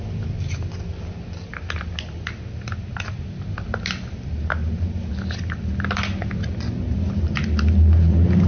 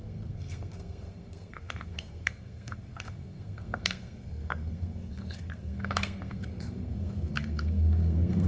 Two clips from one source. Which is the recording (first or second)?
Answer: first